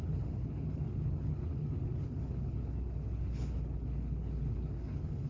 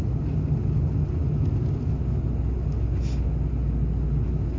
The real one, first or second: second